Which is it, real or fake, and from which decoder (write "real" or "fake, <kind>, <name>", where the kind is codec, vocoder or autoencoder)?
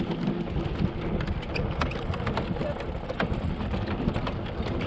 real